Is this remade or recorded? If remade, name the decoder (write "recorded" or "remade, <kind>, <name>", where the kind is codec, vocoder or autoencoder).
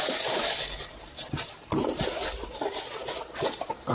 recorded